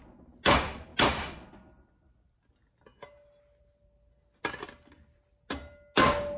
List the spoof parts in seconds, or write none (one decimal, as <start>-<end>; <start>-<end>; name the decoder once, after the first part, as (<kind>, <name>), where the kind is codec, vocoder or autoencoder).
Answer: none